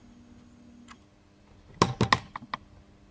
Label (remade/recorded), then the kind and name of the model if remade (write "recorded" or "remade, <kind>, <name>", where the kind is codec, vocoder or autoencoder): recorded